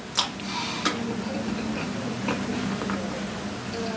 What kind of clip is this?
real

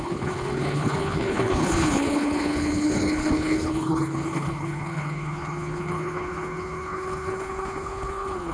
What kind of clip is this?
fake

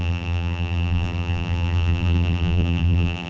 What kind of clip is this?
fake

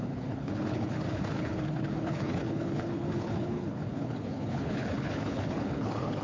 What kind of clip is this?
fake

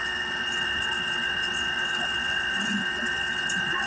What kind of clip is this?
fake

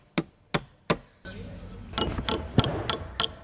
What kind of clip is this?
real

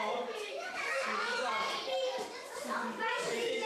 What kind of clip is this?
fake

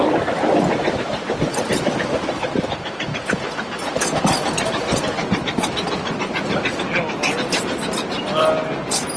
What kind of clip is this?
real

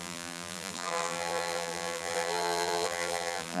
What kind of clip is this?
fake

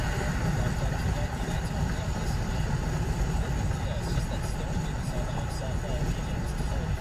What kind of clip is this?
real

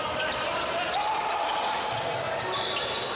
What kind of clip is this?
real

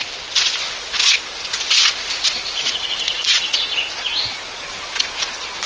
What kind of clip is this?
fake